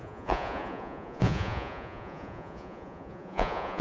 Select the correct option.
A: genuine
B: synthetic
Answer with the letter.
B